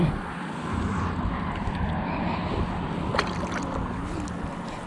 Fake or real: real